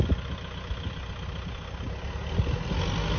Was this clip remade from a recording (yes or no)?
no